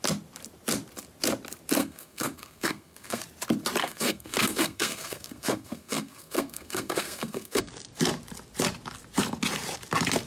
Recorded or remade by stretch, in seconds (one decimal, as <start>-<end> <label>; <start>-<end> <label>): 0.0-1.8 recorded; 1.8-3.2 remade; 3.2-3.8 recorded; 3.8-7.7 remade; 7.7-10.3 recorded